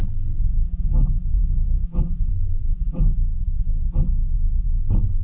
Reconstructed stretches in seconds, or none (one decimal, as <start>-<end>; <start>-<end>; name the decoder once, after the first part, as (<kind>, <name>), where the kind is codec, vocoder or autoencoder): 0.4-2.3 (vocoder, BigVGAN v2); 2.7-4.8